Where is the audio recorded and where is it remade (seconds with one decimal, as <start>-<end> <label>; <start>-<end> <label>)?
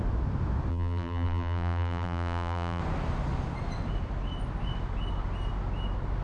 0.0-0.7 recorded; 0.7-2.8 remade; 2.8-6.2 recorded